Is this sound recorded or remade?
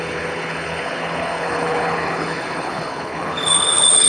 remade